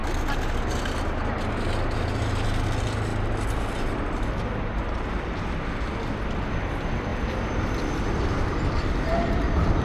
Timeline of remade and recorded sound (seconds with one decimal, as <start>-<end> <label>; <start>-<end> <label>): 0.0-9.8 recorded